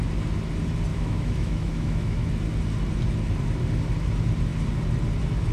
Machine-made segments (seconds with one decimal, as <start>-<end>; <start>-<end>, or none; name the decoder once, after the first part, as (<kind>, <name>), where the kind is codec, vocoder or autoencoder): 0.9-2.3 (autoencoder, DAC-VAE)